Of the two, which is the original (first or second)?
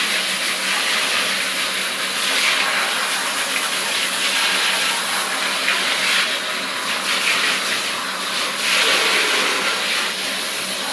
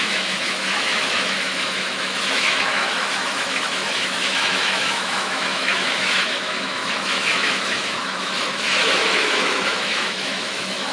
first